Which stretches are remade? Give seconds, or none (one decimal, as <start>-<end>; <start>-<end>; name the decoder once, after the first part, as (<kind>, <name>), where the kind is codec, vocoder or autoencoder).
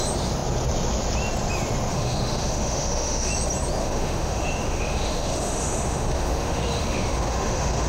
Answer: 1.9-3.3 (autoencoder, DAC-VAE); 3.8-7.9